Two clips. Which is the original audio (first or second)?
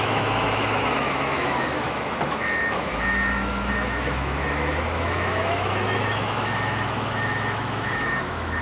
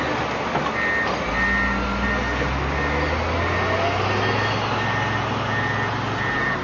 second